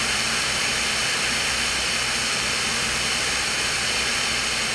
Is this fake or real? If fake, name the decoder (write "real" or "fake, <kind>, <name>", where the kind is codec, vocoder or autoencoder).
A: real